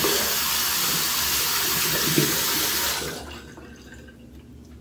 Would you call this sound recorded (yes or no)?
yes